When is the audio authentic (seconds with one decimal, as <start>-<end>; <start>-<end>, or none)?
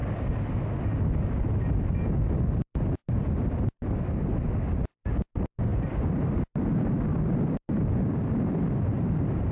0.0-9.5